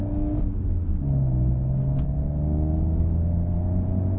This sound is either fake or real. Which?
real